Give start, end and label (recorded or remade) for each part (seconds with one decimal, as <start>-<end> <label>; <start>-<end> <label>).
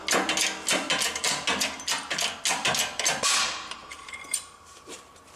0.0-3.8 recorded; 3.8-5.4 remade